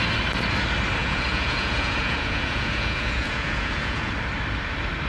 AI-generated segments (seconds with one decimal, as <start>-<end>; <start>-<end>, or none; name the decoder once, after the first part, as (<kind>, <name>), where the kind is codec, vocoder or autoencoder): 1.0-4.1 (vocoder, Vocos)